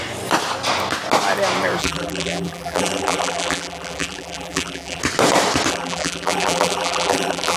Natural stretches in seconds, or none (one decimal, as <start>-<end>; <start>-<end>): 0.0-1.8; 5.0-5.7